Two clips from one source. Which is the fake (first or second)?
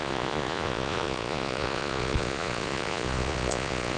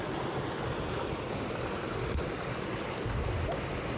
first